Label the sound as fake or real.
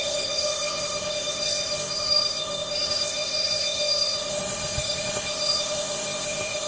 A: fake